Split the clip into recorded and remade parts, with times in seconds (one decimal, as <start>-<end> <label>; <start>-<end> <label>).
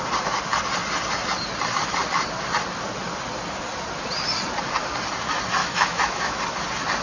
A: 0.0-5.6 recorded; 5.6-6.4 remade; 6.4-7.0 recorded